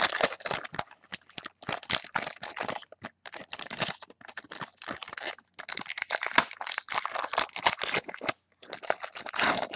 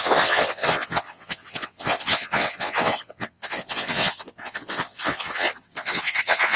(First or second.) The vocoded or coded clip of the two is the second